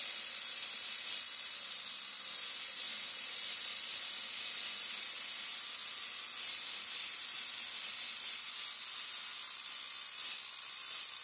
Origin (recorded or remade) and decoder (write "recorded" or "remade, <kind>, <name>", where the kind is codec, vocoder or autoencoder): recorded